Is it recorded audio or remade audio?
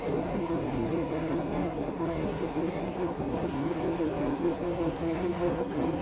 remade